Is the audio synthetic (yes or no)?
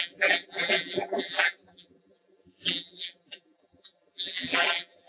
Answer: yes